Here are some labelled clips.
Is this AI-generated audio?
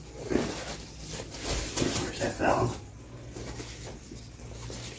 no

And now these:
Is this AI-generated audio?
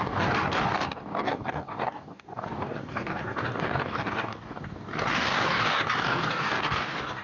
yes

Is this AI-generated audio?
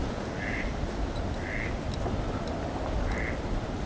no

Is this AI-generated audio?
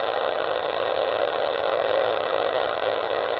yes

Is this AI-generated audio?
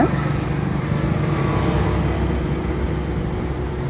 no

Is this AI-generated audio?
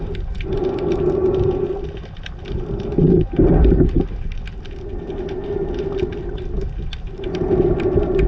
no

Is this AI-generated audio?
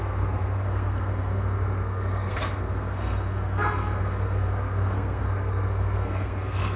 yes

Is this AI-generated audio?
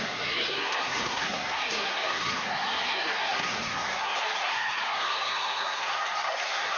yes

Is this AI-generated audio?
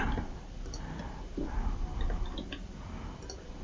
no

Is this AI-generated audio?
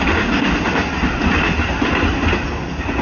no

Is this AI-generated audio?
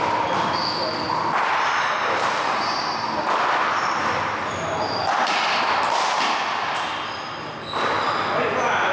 no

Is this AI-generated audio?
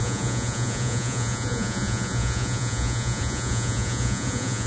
yes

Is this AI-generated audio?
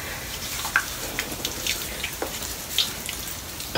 no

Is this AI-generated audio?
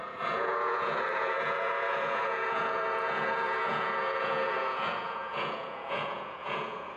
yes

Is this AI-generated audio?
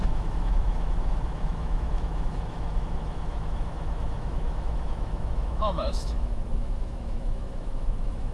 yes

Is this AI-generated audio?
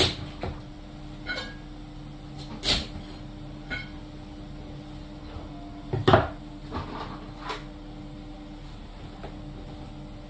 no